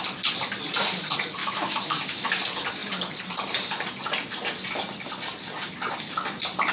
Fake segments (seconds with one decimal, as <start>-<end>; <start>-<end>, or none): 1.4-2.3